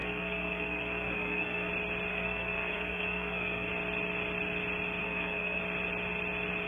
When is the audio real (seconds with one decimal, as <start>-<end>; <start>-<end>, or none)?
1.7-2.1; 3.7-5.0; 5.6-6.7